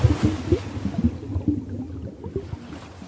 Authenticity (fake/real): real